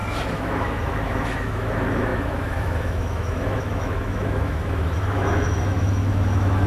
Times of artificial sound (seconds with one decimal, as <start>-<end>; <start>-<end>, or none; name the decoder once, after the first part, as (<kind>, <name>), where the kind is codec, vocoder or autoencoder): 0.0-6.7 (autoencoder, DAC-VAE)